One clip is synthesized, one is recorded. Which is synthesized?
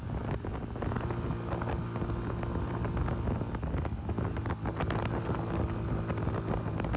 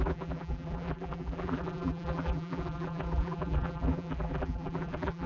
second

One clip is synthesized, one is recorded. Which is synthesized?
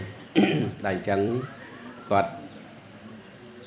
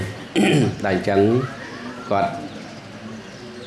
first